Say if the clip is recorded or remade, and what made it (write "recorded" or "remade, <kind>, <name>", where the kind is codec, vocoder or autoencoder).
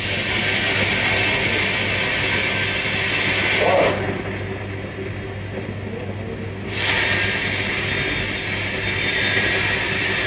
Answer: recorded